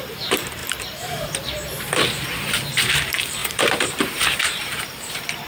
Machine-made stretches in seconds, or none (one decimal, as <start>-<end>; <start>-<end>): 0.0-5.5